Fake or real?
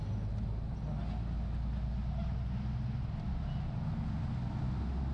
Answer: real